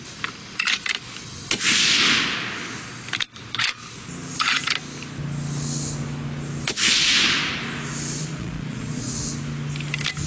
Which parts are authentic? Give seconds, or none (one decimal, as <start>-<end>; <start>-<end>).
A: 0.0-8.2; 9.1-10.3